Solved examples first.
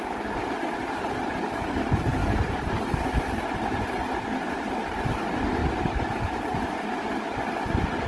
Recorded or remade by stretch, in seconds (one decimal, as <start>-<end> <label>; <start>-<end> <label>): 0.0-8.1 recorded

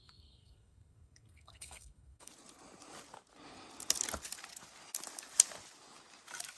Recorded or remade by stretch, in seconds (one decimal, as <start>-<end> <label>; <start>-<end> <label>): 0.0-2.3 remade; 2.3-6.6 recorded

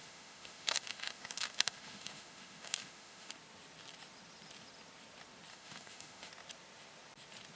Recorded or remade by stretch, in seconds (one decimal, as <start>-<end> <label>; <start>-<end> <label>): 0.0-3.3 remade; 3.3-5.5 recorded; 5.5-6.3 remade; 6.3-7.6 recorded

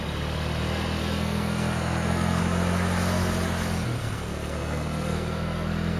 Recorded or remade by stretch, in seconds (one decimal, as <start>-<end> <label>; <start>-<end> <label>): 0.0-1.0 recorded; 1.0-2.4 remade; 2.4-4.0 recorded; 4.0-6.0 remade

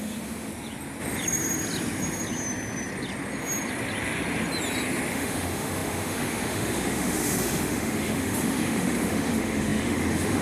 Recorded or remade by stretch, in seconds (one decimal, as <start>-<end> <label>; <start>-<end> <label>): 0.0-0.5 remade; 0.5-5.1 recorded; 5.1-10.4 remade